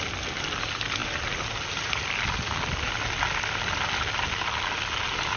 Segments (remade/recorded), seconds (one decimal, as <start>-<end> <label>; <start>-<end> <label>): 0.0-5.4 recorded